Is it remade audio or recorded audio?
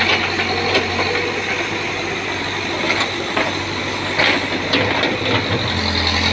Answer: recorded